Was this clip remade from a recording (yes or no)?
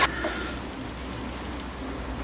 no